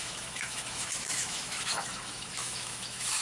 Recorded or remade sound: remade